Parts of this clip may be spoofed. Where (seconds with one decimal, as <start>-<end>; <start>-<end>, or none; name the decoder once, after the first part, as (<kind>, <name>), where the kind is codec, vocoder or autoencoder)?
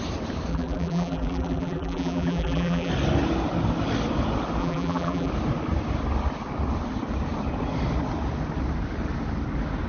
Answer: 0.5-2.9 (vocoder, BigVGAN v2); 4.6-5.3